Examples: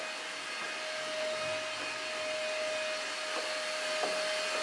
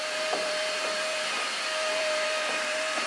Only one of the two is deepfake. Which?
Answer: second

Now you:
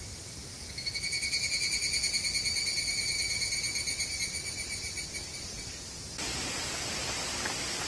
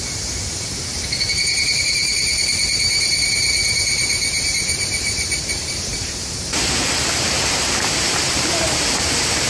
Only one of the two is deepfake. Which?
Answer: second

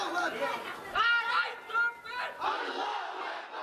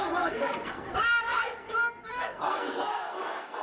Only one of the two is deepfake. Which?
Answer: second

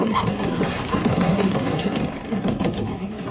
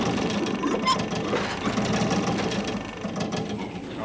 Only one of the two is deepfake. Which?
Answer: first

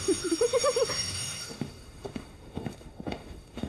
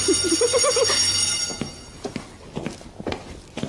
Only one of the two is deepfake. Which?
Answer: first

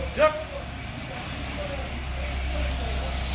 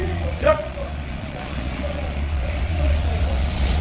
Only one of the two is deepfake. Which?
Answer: second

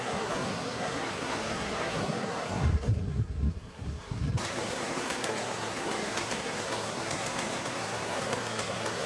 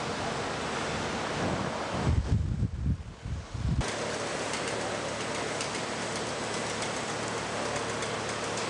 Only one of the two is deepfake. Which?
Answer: first